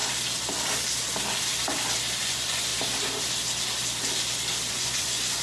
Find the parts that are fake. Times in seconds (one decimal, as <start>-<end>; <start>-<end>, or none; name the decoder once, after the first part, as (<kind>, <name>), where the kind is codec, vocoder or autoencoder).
2.2-2.7 (vocoder, Vocos); 4.7-5.4